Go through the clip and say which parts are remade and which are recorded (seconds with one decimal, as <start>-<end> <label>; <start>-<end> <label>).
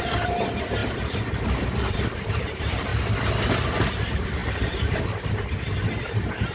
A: 0.0-2.9 remade; 2.9-3.9 recorded; 3.9-6.5 remade